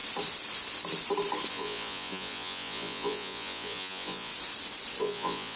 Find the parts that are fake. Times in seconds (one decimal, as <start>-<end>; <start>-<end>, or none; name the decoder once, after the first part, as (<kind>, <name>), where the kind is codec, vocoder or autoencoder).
1.5-4.3 (vocoder, Vocos); 5.0-5.6